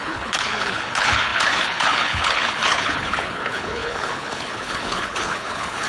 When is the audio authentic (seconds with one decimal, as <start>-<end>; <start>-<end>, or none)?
none

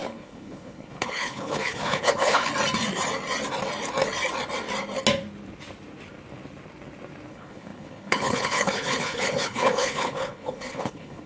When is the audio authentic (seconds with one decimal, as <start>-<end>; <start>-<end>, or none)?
2.5-7.3

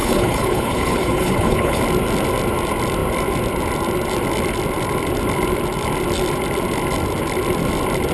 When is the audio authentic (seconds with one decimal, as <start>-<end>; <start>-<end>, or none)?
1.8-8.1

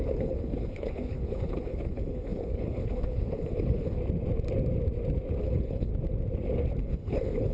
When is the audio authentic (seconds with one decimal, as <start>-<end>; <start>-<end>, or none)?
4.0-5.4; 5.9-6.8